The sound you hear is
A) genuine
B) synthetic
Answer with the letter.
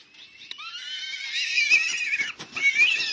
A